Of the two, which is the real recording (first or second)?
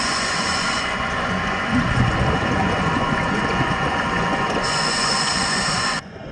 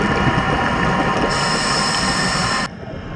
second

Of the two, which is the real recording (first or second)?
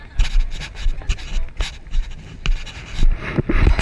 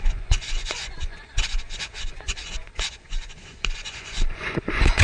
first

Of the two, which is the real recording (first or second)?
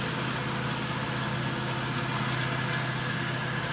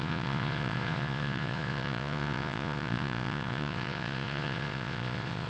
first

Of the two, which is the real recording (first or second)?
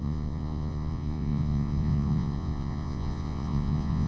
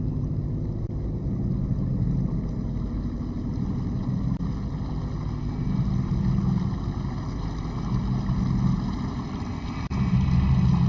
second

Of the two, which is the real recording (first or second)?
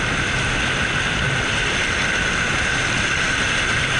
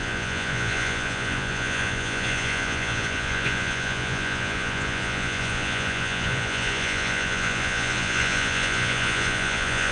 first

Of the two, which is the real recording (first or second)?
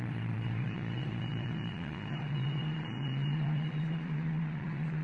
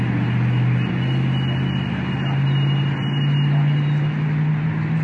second